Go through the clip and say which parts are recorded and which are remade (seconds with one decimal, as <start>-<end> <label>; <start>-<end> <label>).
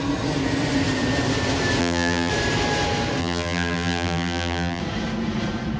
0.0-1.8 recorded; 1.8-2.3 remade; 2.3-3.2 recorded; 3.2-4.8 remade; 4.8-5.8 recorded